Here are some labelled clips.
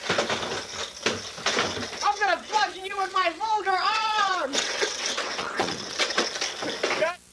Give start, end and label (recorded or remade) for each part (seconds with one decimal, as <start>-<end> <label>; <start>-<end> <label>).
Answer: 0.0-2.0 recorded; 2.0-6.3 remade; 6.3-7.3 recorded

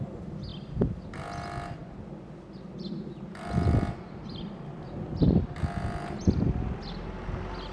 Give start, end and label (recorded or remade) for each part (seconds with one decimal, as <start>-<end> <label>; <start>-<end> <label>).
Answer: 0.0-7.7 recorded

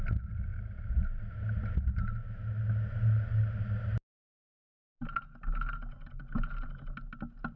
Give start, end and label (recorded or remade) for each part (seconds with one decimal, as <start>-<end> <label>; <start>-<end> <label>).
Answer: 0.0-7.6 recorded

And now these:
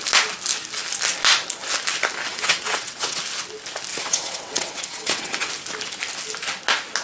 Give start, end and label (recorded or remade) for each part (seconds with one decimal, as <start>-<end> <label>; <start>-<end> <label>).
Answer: 0.0-2.3 recorded; 2.3-3.2 remade; 3.2-3.9 recorded; 3.9-5.5 remade; 5.5-7.0 recorded